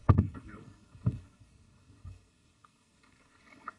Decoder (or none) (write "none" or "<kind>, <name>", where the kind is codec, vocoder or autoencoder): codec, SNAC